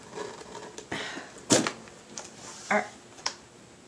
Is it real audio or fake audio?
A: real